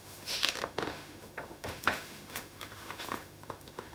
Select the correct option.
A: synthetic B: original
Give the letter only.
A